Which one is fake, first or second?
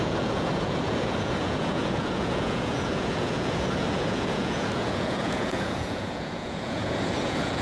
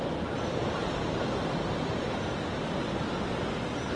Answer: first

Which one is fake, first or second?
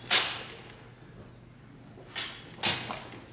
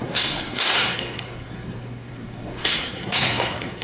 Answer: second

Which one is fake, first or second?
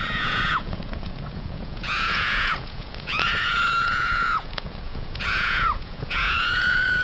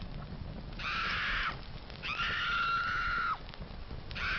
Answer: first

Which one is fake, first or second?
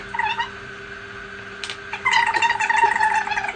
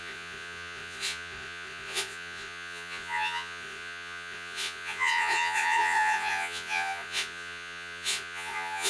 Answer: second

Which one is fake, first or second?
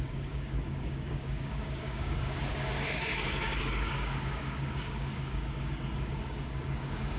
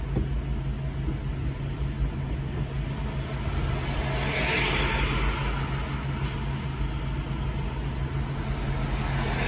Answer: first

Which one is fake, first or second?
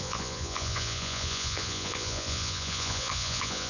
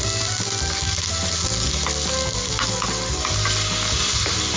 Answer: first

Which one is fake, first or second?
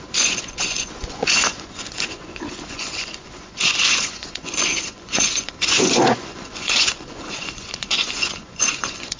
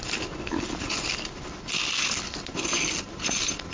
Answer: first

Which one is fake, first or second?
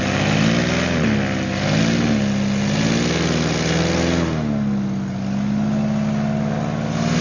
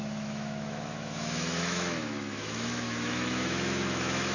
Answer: second